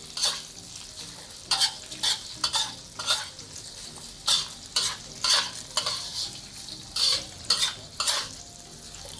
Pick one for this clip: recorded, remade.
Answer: recorded